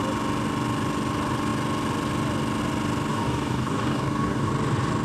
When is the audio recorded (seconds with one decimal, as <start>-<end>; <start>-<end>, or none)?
0.0-3.1; 4.5-5.0